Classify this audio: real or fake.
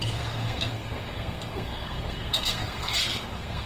fake